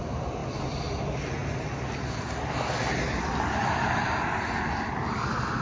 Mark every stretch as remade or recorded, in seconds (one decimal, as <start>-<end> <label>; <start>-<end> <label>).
0.0-5.6 recorded